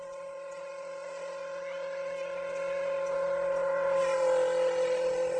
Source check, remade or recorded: recorded